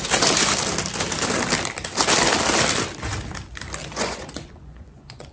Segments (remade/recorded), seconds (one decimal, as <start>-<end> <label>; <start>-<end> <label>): 0.0-3.8 recorded; 3.8-5.3 remade